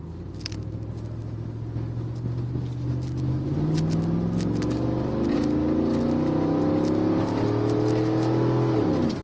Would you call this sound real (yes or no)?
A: yes